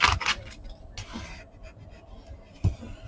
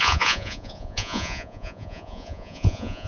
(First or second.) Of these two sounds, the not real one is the second